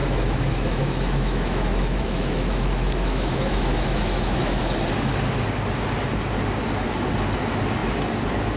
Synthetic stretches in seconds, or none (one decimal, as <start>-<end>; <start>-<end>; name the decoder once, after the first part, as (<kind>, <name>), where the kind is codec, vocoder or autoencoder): 0.0-4.6 (autoencoder, DAC-VAE)

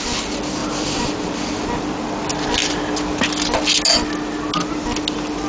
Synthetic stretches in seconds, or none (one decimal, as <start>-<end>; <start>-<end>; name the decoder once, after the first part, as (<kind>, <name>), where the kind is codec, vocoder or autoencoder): none

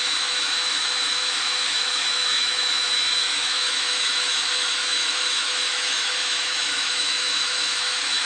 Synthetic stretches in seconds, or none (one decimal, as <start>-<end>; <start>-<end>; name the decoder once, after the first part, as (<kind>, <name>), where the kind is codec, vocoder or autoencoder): 0.0-8.3 (autoencoder, DAC-VAE)

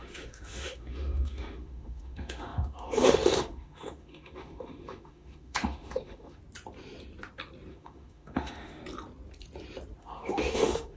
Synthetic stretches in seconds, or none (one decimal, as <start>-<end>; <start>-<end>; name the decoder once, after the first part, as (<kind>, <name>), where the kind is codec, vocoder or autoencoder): 0.0-6.4 (autoencoder, DAC-VAE); 7.7-8.8; 10.0-11.0

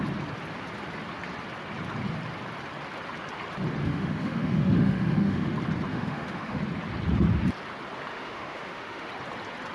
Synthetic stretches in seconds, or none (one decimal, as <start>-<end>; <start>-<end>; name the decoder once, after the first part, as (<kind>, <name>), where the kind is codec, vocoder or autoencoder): 3.8-5.5 (autoencoder, DAC-VAE); 5.9-6.6; 8.1-9.1

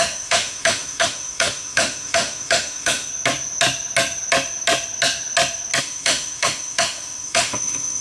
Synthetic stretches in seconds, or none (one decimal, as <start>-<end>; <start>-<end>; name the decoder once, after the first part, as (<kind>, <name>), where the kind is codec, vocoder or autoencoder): 0.0-3.1 (autoencoder, DAC-VAE); 5.8-8.0